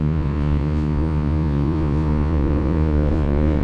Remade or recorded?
remade